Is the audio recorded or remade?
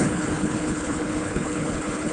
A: remade